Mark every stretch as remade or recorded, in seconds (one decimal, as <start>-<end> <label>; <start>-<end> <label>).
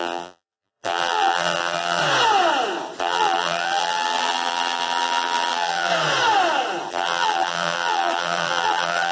0.0-2.0 remade; 2.0-3.0 recorded; 3.0-5.9 remade; 5.9-6.9 recorded; 6.9-9.1 remade